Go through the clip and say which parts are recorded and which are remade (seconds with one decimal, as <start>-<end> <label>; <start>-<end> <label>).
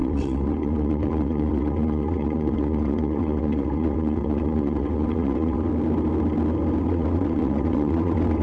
0.0-5.7 remade; 5.7-6.8 recorded; 6.8-8.4 remade